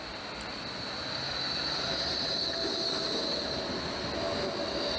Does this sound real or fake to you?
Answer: real